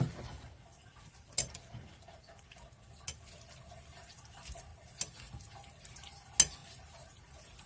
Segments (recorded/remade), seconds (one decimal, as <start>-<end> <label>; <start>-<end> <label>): 0.0-7.7 recorded

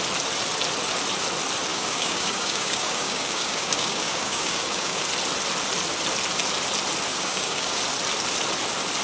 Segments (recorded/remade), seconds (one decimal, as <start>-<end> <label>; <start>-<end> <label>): 0.0-1.7 recorded; 1.7-5.0 remade; 5.0-7.1 recorded; 7.1-7.8 remade; 7.8-9.0 recorded

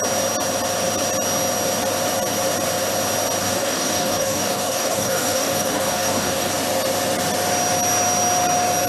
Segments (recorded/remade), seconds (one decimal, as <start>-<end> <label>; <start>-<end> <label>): 0.0-3.4 recorded; 3.4-6.5 remade; 6.5-8.9 recorded

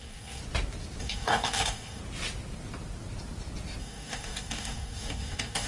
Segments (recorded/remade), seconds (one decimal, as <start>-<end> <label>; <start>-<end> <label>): 0.0-0.4 remade; 0.4-1.0 recorded; 1.0-2.0 remade; 2.0-3.8 recorded; 3.8-5.7 remade

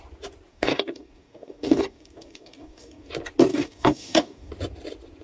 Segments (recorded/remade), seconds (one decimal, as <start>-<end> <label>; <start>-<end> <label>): 0.0-0.5 recorded; 0.5-3.1 remade; 3.1-3.5 recorded; 3.5-4.5 remade; 4.5-5.2 recorded

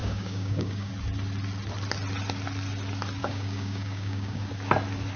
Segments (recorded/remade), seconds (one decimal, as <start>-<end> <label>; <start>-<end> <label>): 0.0-0.9 remade; 0.9-3.2 recorded; 3.2-4.5 remade; 4.5-5.2 recorded

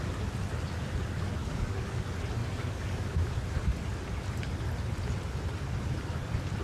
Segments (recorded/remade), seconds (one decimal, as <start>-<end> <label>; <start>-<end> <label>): 0.0-1.4 recorded; 1.4-2.0 remade; 2.0-2.4 recorded; 2.4-3.3 remade; 3.3-6.6 recorded